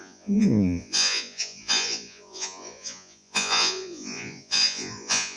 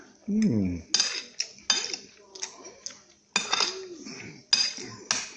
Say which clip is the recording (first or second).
second